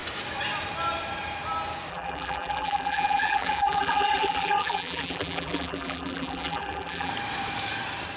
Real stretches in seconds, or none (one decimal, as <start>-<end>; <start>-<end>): 0.0-1.9; 7.1-8.2